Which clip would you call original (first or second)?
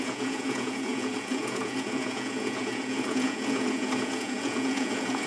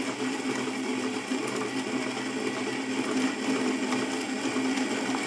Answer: second